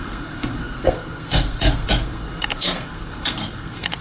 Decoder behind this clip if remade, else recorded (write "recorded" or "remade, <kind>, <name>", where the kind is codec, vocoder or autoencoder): remade, codec, SNAC